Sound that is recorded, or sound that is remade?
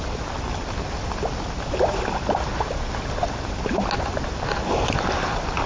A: recorded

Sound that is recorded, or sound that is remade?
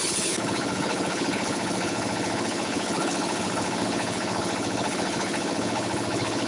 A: remade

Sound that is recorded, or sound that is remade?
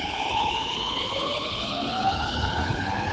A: remade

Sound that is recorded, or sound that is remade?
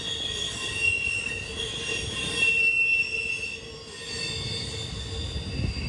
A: recorded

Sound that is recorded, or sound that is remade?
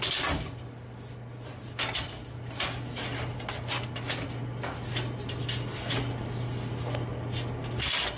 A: recorded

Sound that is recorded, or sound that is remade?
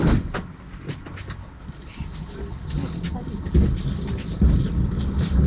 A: recorded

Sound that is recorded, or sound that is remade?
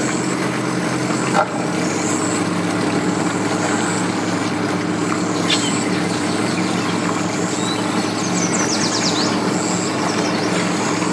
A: recorded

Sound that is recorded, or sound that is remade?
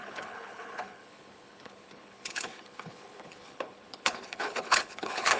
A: remade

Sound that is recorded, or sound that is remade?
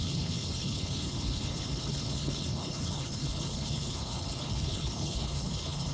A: remade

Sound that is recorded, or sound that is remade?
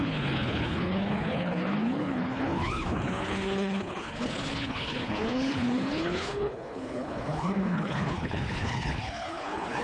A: remade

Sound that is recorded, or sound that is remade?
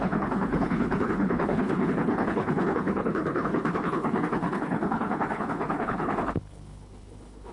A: remade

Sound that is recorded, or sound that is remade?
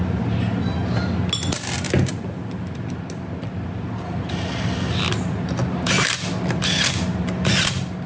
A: recorded